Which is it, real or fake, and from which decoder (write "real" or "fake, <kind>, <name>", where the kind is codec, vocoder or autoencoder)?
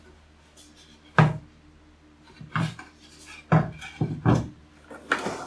real